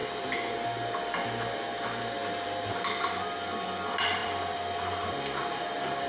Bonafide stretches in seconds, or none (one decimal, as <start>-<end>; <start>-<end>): 0.0-6.1